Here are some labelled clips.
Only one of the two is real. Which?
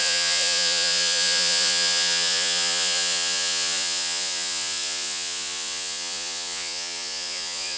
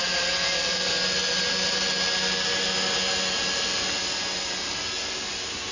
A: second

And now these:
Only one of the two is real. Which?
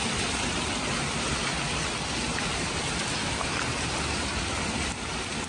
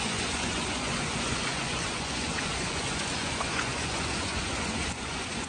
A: first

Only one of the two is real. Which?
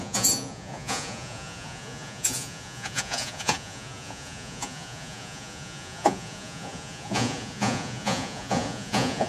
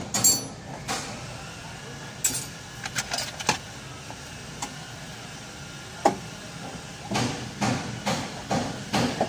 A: second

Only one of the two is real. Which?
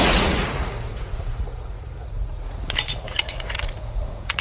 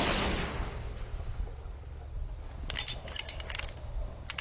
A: second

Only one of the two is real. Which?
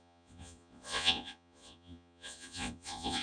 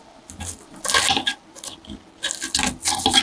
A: second